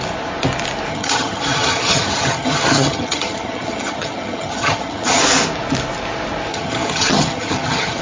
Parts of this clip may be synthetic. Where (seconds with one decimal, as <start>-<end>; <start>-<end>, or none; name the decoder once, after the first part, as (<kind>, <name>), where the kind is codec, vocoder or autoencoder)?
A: 0.9-5.2 (vocoder, HiFi-GAN); 6.5-8.0